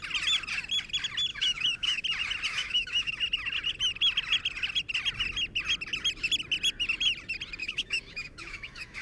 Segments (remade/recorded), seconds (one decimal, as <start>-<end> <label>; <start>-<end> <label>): 0.0-1.3 recorded; 1.3-2.0 remade; 2.0-2.5 recorded; 2.5-3.1 remade; 3.1-7.6 recorded; 7.6-9.0 remade